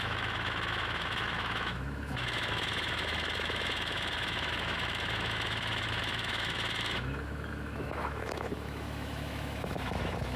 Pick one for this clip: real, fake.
fake